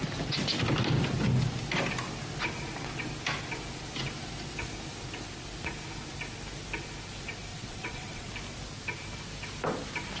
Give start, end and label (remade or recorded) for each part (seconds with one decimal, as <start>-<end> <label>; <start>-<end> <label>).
0.0-7.5 recorded; 7.5-8.3 remade; 8.3-10.2 recorded